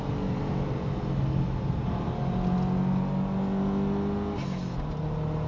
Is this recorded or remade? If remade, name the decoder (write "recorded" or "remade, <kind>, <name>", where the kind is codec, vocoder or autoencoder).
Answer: recorded